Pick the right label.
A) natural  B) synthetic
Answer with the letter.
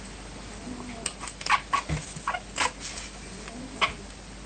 A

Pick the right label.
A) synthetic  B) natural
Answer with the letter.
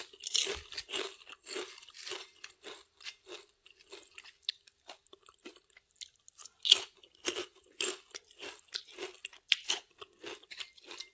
B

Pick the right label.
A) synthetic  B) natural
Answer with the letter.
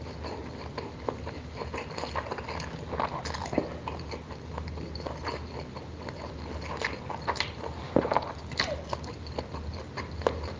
B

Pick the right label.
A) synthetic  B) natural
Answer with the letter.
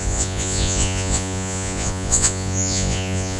A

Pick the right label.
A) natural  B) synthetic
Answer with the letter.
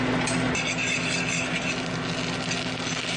A